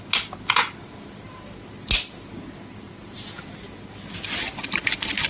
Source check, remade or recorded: recorded